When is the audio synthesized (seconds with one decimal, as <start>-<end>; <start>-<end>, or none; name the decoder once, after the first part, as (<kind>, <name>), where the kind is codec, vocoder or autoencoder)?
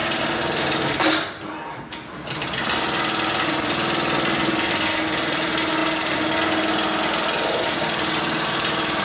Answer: none